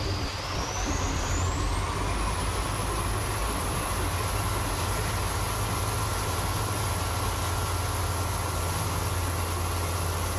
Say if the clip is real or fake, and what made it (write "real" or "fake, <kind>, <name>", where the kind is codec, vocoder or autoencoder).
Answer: real